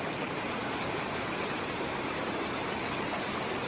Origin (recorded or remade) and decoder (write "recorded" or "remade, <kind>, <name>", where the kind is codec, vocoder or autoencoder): remade, vocoder, BigVGAN v2